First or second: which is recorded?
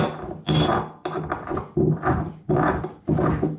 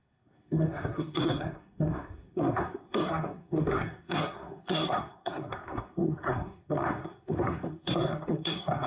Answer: first